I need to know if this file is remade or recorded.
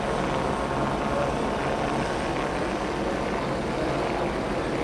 recorded